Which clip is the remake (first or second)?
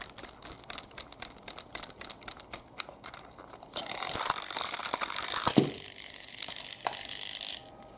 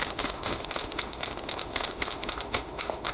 second